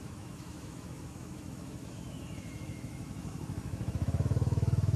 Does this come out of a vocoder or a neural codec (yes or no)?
yes